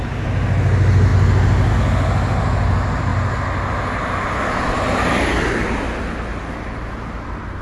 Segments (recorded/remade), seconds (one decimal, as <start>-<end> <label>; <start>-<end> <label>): 0.0-7.6 recorded